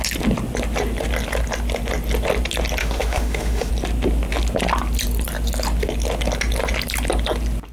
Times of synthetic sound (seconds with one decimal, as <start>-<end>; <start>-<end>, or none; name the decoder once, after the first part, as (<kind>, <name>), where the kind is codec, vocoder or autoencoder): 2.8-3.7 (autoencoder, DAC-VAE)